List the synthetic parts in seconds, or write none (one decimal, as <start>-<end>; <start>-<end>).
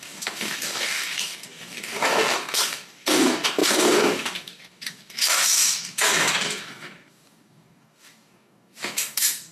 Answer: 0.0-9.5